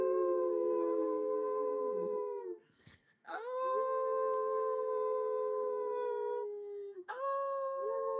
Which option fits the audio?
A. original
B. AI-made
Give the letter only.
B